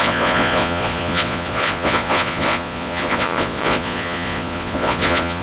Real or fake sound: fake